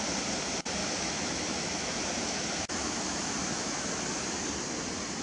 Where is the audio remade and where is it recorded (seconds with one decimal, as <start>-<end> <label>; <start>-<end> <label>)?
0.0-0.8 recorded; 0.8-3.9 remade; 3.9-5.2 recorded